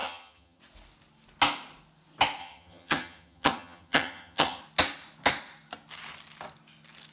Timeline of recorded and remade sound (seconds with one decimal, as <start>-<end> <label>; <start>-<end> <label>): 0.0-0.6 remade; 0.6-2.4 recorded; 2.4-4.6 remade; 4.6-7.1 recorded